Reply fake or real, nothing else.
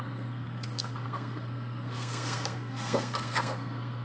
fake